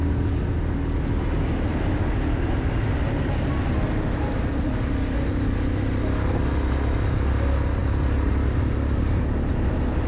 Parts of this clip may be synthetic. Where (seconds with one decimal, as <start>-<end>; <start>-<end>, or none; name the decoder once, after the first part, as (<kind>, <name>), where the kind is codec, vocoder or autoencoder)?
none